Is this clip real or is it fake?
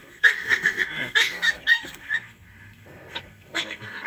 fake